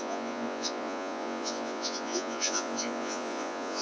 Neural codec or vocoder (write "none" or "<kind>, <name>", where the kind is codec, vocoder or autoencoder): vocoder, Vocos